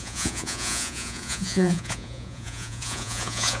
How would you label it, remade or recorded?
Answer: remade